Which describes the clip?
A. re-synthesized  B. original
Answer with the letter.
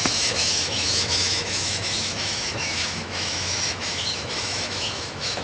A